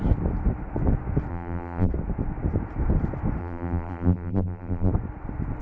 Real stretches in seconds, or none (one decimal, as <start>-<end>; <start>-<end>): 0.0-1.3; 1.9-3.4; 4.9-5.6